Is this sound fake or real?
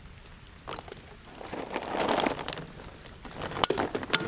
real